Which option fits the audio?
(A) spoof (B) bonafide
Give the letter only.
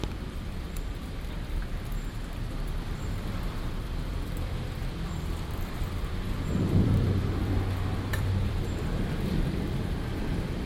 A